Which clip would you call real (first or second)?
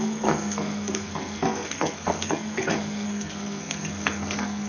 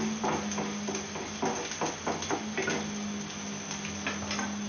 second